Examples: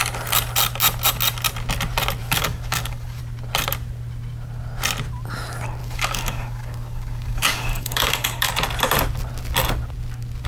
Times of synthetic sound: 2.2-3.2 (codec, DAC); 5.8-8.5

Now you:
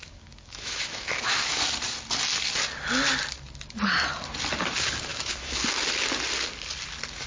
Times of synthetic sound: 0.0-1.6 (autoencoder, DAC-VAE); 5.1-5.6

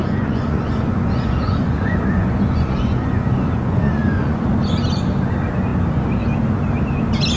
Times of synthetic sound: 0.0-4.4 (vocoder, Vocos)

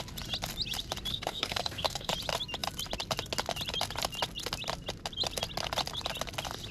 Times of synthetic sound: 1.1-2.1 (codec, SNAC)

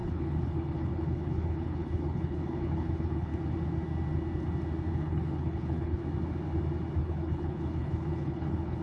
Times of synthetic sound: 0.0-3.3 (codec, HILCodec); 4.9-6.0; 7.0-8.8

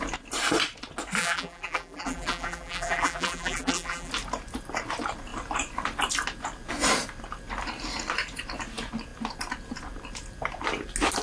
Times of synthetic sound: 1.2-4.1 (vocoder, BigVGAN v2)